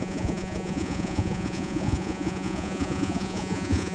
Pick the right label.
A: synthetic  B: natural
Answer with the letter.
A